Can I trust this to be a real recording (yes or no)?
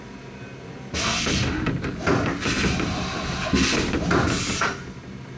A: yes